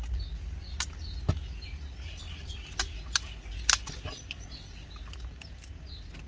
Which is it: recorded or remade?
recorded